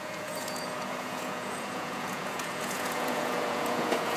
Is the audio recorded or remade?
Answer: remade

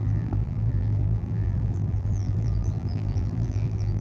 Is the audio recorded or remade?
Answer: remade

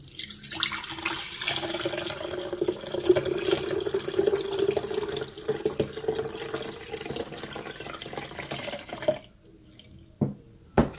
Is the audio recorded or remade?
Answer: recorded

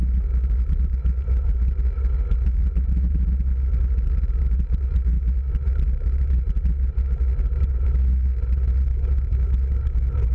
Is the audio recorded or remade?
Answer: recorded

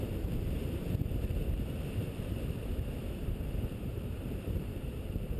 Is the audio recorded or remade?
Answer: remade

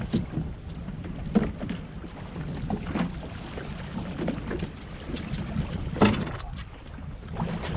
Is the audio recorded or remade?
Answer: recorded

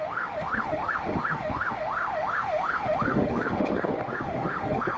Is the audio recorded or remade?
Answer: remade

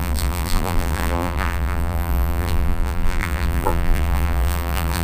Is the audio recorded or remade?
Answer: remade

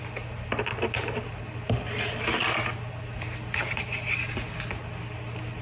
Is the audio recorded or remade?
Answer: recorded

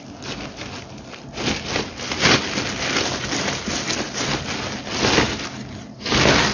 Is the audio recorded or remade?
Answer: recorded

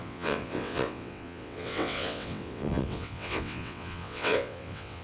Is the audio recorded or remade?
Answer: remade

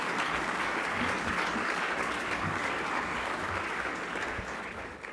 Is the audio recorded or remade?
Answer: remade